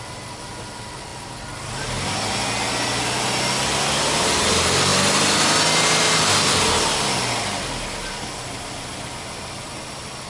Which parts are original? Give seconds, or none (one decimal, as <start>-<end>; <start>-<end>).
0.0-10.3